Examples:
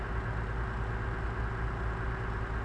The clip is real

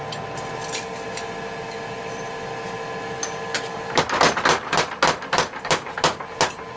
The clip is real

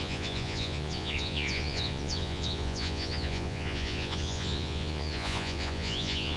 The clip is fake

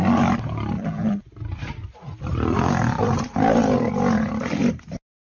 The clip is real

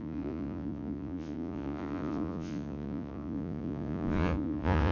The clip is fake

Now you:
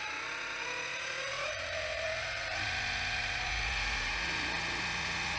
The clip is fake